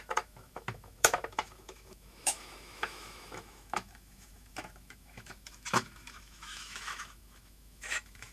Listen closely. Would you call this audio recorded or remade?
remade